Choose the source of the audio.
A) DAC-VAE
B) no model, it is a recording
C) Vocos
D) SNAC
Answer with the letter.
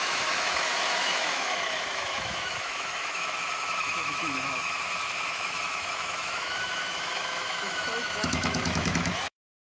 A